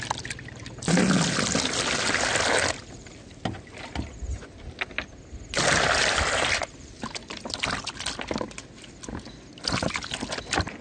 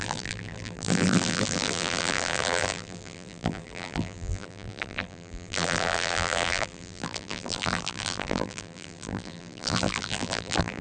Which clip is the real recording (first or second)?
first